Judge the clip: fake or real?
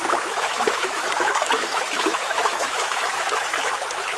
fake